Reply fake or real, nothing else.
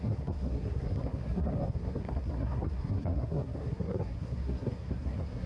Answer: fake